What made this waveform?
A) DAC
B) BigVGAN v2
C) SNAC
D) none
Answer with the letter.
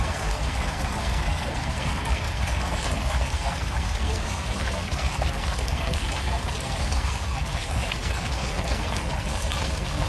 C